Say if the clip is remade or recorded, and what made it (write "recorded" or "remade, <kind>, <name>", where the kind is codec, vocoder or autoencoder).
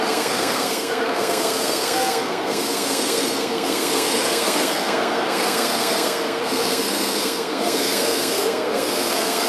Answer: remade, codec, SNAC